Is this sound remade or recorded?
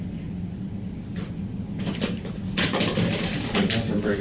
remade